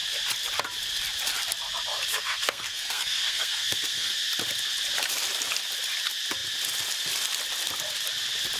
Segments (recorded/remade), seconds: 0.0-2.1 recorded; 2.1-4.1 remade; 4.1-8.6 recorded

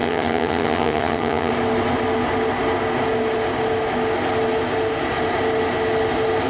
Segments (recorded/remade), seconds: 0.0-1.5 remade; 1.5-6.5 recorded

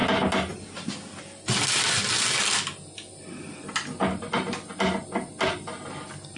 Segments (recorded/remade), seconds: 0.0-6.4 recorded

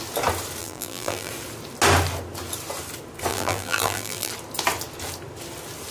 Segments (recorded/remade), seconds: 0.0-0.6 recorded; 0.6-1.3 remade; 1.3-3.3 recorded; 3.3-4.3 remade; 4.3-5.9 recorded

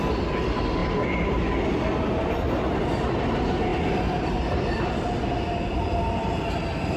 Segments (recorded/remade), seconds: 0.0-3.7 recorded; 3.7-4.9 remade; 4.9-7.0 recorded

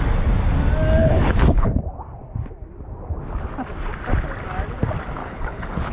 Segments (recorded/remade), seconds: 0.0-1.0 recorded; 1.0-1.8 remade; 1.8-5.2 recorded; 5.2-5.9 remade

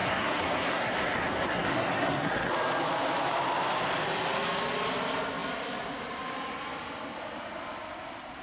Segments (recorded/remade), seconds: 0.0-2.5 remade; 2.5-8.4 recorded